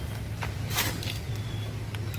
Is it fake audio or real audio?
real